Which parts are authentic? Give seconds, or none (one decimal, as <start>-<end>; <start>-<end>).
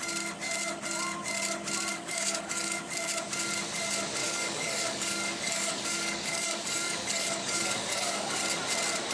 0.0-1.9; 2.8-4.2; 8.4-9.1